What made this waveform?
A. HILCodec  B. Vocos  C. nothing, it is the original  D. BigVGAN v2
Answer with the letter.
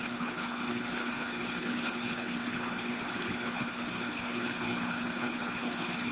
A